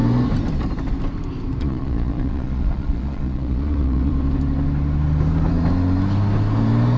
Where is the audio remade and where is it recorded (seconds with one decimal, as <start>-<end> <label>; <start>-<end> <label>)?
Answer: 0.0-1.6 recorded; 1.6-4.1 remade; 4.1-7.0 recorded